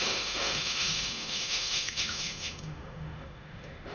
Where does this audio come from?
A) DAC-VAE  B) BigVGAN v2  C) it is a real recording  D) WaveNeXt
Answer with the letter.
A